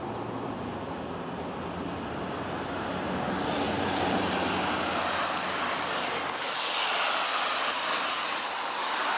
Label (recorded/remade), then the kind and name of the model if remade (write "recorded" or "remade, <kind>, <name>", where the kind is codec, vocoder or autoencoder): recorded